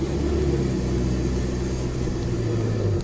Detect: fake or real real